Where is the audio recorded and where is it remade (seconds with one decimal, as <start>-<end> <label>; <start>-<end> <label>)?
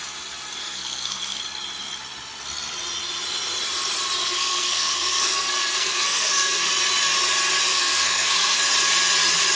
0.0-0.6 recorded; 0.6-1.4 remade; 1.4-4.2 recorded; 4.2-6.7 remade; 6.7-7.7 recorded; 7.7-8.6 remade; 8.6-9.6 recorded